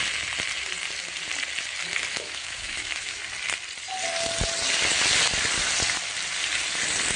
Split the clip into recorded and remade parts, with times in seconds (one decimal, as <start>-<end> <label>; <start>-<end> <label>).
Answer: 0.0-2.1 recorded; 2.1-3.2 remade; 3.2-7.2 recorded